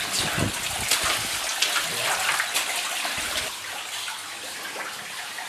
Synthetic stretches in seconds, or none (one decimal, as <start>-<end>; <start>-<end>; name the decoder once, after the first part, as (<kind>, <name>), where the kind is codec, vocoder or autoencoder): none